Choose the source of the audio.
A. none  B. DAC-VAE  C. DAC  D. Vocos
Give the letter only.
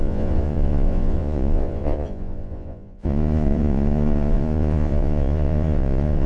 D